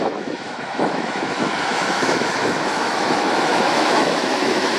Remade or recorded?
remade